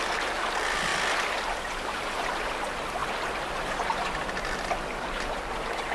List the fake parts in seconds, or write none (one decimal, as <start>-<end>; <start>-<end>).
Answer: none